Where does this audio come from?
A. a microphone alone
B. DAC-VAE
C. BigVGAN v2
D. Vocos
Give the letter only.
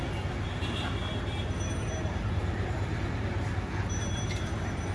C